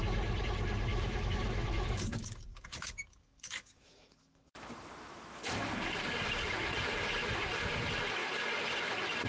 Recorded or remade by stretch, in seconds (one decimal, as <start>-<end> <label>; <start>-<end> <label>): 0.0-0.9 recorded; 0.9-5.8 remade; 5.8-9.3 recorded